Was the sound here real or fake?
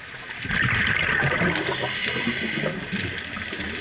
real